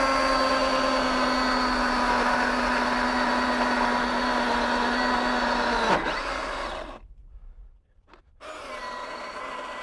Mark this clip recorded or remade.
recorded